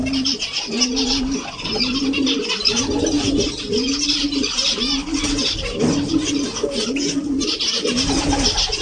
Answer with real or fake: real